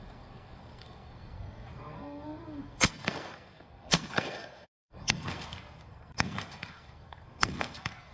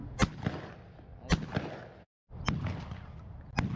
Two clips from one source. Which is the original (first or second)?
second